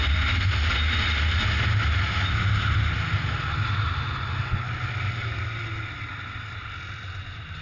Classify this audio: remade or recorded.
recorded